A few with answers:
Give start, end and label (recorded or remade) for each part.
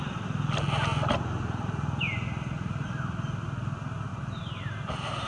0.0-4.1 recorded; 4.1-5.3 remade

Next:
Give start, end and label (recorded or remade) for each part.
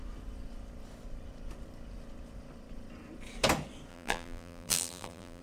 0.0-3.9 recorded; 3.9-5.4 remade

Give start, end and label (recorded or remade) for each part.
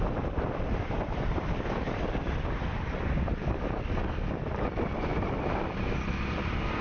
0.0-5.1 remade; 5.1-6.3 recorded; 6.3-6.8 remade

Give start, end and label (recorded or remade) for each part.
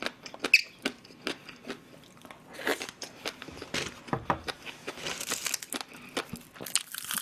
0.0-7.2 recorded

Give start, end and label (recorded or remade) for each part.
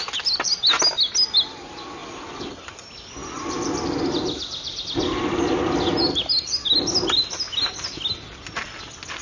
0.0-2.0 recorded; 2.0-2.7 remade; 2.7-3.2 recorded; 3.2-4.8 remade; 4.8-9.2 recorded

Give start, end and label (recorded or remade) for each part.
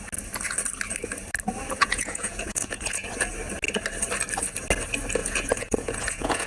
0.0-1.8 recorded; 1.8-3.1 remade; 3.1-5.2 recorded; 5.2-6.5 remade